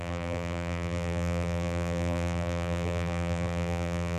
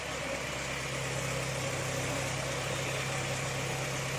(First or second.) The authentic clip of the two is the second